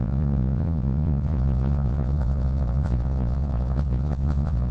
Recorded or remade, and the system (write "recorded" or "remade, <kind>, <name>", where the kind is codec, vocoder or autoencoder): remade, vocoder, Vocos